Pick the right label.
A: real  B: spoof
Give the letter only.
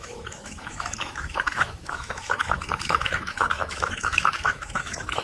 B